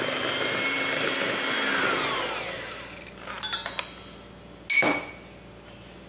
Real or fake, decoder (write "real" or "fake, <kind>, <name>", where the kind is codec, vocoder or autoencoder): real